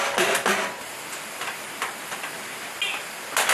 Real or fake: fake